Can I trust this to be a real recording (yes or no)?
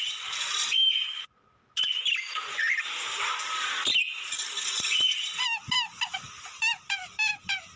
yes